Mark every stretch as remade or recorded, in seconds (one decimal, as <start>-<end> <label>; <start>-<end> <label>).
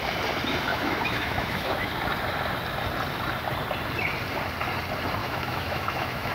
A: 0.0-0.7 recorded; 0.7-1.9 remade; 1.9-5.2 recorded; 5.2-6.3 remade